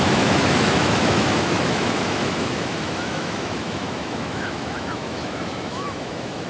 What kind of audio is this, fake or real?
fake